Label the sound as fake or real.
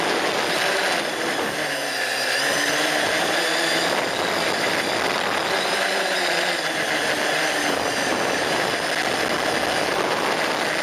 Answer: real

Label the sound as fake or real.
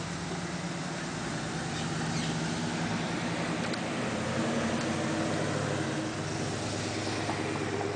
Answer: real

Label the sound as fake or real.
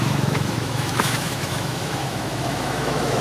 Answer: fake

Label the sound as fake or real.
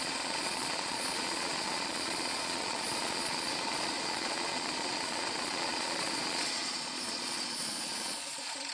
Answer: fake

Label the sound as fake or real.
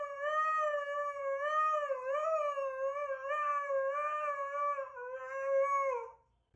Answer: real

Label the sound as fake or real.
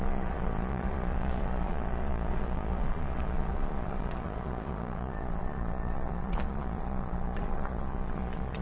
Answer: fake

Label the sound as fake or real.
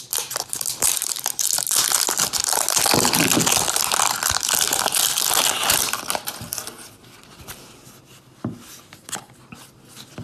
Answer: real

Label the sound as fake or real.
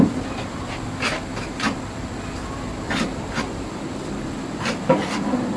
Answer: real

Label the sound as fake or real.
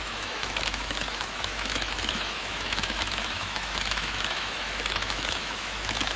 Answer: fake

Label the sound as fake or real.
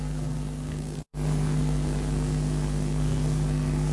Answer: fake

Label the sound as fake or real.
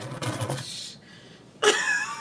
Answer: fake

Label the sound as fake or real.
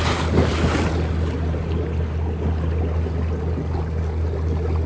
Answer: real